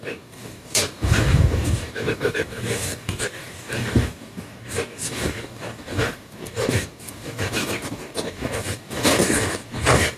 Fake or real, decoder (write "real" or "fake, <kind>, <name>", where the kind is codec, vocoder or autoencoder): fake, codec, DAC